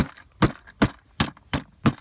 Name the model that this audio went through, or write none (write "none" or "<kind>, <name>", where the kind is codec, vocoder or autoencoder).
none